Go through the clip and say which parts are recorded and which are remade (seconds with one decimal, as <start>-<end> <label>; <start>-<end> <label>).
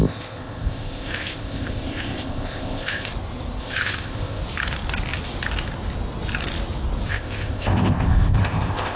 0.0-3.1 remade; 3.1-3.6 recorded; 3.6-4.4 remade; 4.4-7.1 recorded; 7.1-9.0 remade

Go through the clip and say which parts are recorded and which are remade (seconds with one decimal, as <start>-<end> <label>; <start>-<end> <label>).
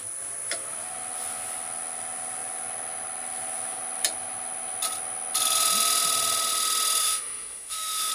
0.0-7.0 recorded; 7.0-8.1 remade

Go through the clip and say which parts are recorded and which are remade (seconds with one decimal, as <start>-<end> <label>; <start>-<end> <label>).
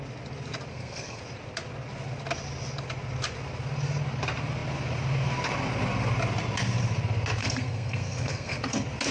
0.0-0.7 recorded; 0.7-1.2 remade; 1.2-7.4 recorded; 7.4-8.6 remade; 8.6-9.1 recorded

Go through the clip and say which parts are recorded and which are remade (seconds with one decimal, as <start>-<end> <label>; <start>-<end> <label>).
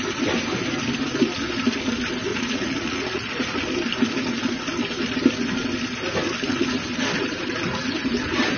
0.0-2.3 recorded; 2.3-3.6 remade; 3.6-8.6 recorded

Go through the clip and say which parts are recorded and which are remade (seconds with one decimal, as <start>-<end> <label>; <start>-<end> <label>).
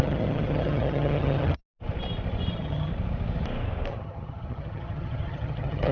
0.0-1.6 remade; 1.6-2.5 recorded; 2.5-2.9 remade; 2.9-3.9 recorded; 3.9-5.9 remade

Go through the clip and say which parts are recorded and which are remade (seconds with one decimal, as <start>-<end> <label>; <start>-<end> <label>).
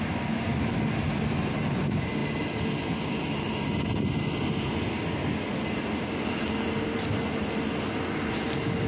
0.0-8.9 recorded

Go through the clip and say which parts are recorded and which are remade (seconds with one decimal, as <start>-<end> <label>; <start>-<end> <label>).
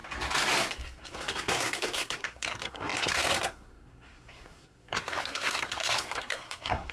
0.0-0.7 recorded; 0.7-6.9 remade